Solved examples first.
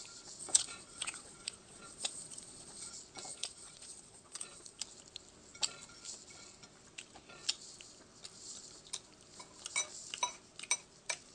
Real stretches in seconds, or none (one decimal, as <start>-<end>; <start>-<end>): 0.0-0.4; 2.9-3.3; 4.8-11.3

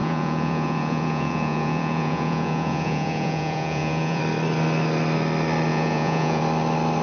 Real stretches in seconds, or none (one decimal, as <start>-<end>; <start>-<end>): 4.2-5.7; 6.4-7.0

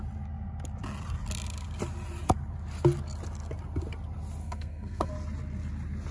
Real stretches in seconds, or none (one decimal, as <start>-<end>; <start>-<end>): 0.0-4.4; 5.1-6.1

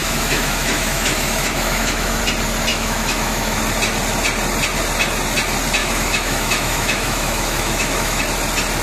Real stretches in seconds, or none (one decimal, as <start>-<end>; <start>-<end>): 2.2-2.7; 3.6-5.8; 8.2-8.8

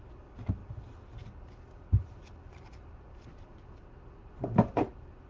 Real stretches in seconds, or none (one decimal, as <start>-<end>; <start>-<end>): 0.0-5.3

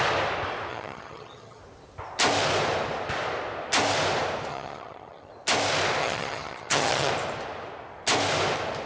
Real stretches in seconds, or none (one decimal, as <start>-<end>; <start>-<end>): 0.0-0.7; 1.6-4.5; 5.3-6.0; 7.1-8.9